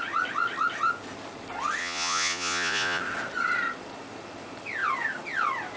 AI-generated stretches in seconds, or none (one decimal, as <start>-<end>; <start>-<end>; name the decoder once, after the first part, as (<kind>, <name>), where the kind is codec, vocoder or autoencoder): 1.8-3.0 (vocoder, Vocos)